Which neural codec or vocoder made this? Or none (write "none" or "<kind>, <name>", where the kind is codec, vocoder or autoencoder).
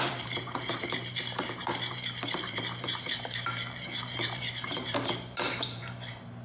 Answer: vocoder, BigVGAN v2